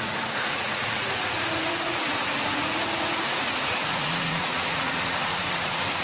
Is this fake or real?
fake